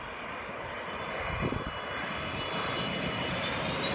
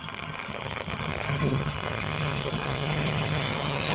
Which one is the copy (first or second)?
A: second